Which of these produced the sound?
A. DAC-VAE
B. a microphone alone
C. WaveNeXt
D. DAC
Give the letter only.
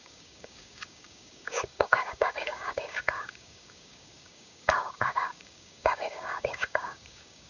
D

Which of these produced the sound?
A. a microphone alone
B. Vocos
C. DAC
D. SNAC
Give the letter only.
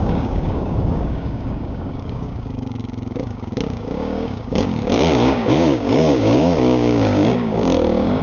C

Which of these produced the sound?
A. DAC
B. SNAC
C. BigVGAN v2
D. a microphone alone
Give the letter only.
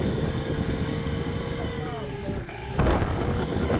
A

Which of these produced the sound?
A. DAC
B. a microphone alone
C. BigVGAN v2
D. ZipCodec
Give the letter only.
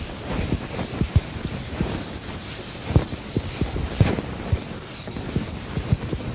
B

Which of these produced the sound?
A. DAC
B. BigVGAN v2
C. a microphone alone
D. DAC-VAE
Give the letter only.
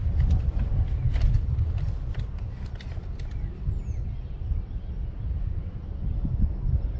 C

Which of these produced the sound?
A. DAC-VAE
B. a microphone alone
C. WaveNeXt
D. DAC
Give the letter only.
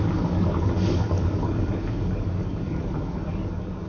D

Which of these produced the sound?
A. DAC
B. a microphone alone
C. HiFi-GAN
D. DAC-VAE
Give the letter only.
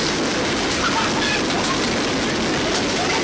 B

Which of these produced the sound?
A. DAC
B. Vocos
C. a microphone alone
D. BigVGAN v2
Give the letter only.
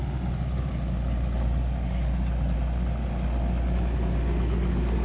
C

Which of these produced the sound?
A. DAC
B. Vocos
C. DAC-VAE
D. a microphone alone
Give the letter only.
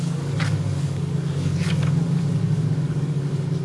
A